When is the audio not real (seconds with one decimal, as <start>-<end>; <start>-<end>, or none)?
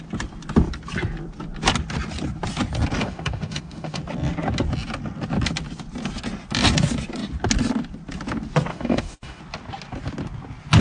3.0-4.0; 8.7-9.4